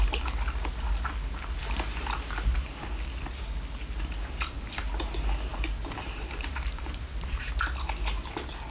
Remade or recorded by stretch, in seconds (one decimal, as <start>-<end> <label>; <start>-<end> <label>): 0.0-5.5 recorded; 5.5-7.4 remade; 7.4-8.7 recorded